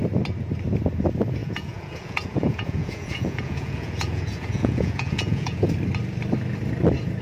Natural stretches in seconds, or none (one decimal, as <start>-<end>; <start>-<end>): 0.0-1.4; 5.7-7.2